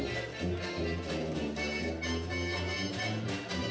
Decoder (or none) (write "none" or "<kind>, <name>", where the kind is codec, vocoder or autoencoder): none